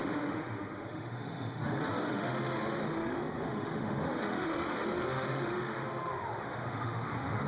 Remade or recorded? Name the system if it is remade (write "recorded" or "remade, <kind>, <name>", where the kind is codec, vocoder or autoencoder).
remade, autoencoder, DAC-VAE